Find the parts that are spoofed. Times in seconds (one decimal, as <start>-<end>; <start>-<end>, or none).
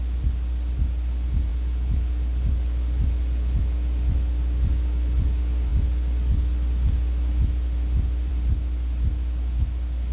none